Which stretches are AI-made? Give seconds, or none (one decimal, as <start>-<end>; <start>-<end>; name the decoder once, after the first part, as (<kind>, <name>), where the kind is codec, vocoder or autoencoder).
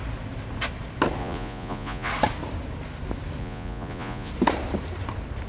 1.2-2.1 (vocoder, Vocos); 3.4-4.3